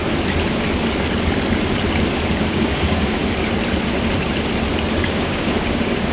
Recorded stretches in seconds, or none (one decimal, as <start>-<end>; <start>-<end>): 0.0-2.3; 3.2-4.9